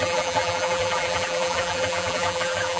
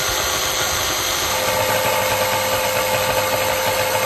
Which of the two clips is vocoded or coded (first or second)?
first